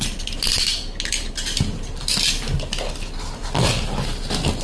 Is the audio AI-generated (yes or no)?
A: no